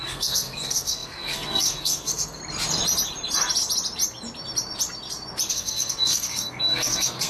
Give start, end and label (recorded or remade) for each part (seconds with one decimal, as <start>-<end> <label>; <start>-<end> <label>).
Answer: 0.0-2.4 remade; 2.4-5.5 recorded; 5.5-7.3 remade